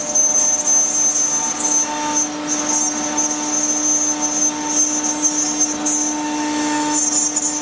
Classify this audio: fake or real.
real